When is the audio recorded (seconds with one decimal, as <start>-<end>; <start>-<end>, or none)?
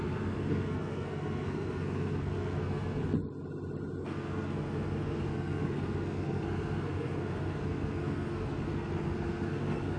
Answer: 3.0-4.0